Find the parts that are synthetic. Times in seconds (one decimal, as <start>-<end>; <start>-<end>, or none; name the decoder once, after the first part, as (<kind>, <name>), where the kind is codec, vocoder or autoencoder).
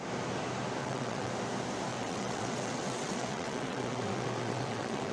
0.8-1.3 (vocoder, WaveNeXt); 1.9-5.1